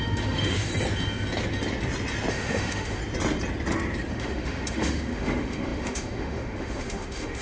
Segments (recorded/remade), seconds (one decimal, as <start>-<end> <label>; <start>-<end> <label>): 0.0-0.7 remade; 0.7-2.3 recorded; 2.3-3.0 remade; 3.0-4.1 recorded; 4.1-7.4 remade